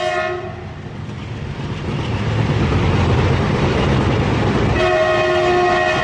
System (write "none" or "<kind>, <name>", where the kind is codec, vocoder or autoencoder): none